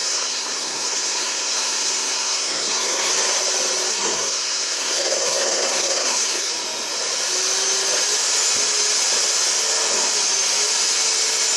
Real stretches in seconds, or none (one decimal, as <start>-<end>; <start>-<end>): 3.1-3.9; 6.5-11.6